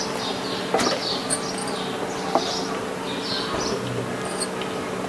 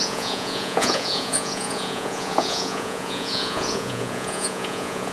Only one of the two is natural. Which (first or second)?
first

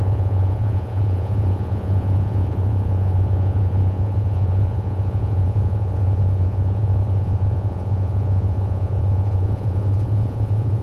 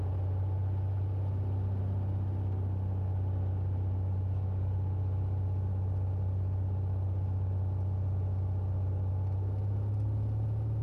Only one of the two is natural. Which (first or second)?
second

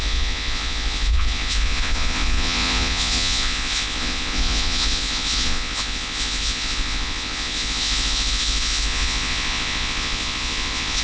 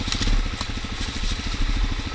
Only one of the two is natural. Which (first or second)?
second